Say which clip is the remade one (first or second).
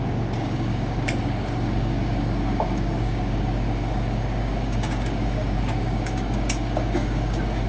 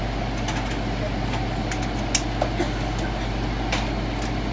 first